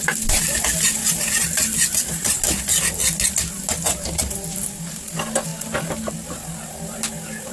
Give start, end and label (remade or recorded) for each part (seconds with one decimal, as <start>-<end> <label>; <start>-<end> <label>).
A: 0.0-7.5 recorded